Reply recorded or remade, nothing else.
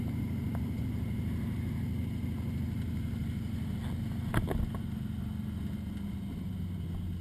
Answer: recorded